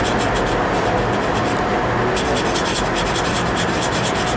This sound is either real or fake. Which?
real